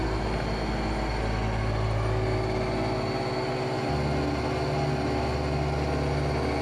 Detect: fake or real real